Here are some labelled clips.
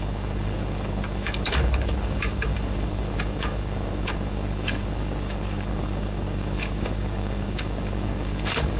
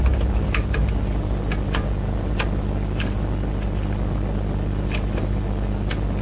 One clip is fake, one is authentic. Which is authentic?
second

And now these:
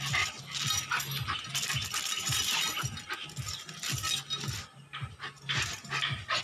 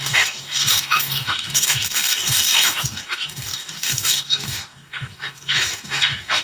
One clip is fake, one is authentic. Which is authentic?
first